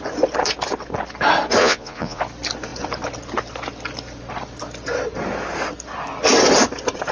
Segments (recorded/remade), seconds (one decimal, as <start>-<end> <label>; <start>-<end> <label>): 0.0-1.6 recorded; 1.6-2.2 remade; 2.2-7.1 recorded

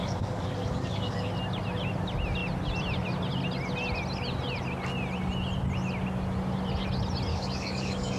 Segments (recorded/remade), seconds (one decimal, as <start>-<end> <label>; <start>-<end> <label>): 0.0-1.3 remade; 1.3-7.3 recorded; 7.3-8.2 remade

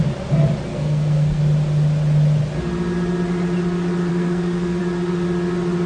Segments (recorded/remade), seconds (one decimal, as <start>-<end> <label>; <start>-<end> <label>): 0.0-0.7 recorded; 0.7-1.4 remade; 1.4-4.1 recorded; 4.1-4.8 remade; 4.8-5.9 recorded

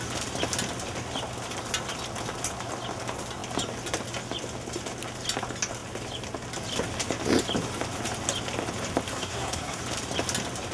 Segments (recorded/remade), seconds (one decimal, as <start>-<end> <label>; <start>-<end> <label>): 0.0-9.1 recorded; 9.1-9.8 remade; 9.8-10.7 recorded

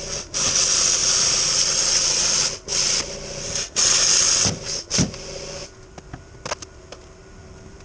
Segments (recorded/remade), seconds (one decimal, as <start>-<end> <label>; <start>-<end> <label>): 0.0-7.8 recorded

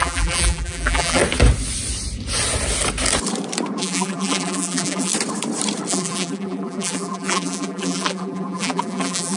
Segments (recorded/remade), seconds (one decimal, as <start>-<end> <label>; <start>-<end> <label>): 0.0-1.2 remade; 1.2-3.8 recorded; 3.8-5.1 remade; 5.1-5.9 recorded; 5.9-9.4 remade

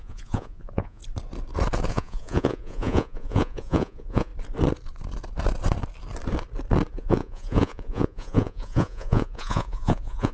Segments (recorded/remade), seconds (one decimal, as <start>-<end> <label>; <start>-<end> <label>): 0.0-1.0 remade; 1.0-1.9 recorded; 1.9-4.3 remade; 4.3-6.9 recorded; 6.9-10.3 remade